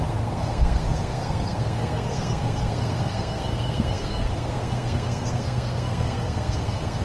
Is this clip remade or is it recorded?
remade